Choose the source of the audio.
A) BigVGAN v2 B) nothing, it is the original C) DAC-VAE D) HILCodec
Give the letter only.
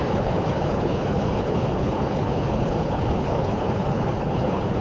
D